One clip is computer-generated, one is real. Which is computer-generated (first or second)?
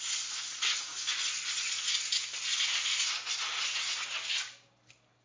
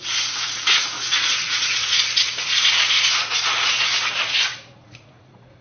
second